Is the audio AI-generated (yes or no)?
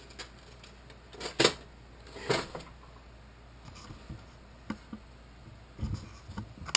no